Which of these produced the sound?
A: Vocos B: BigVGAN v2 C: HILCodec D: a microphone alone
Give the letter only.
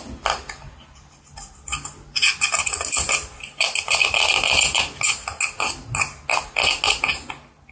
D